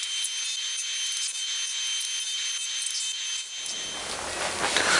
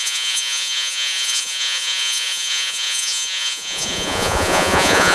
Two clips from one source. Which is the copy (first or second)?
second